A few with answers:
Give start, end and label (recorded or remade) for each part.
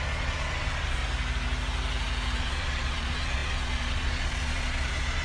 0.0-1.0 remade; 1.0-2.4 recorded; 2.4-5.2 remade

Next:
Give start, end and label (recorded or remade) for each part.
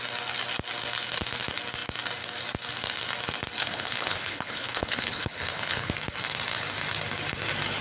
0.0-3.6 recorded; 3.6-5.9 remade; 5.9-7.8 recorded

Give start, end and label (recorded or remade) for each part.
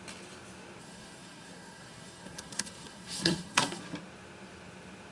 0.0-0.8 recorded; 0.8-3.8 remade; 3.8-5.1 recorded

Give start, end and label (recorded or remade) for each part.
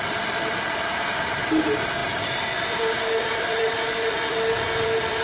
0.0-5.2 recorded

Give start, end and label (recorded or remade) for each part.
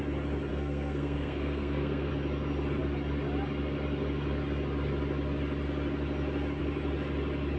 0.0-0.5 recorded; 0.5-2.1 remade; 2.1-7.6 recorded